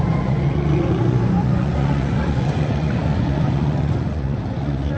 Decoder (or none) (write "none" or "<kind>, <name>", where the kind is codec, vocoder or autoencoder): vocoder, Vocos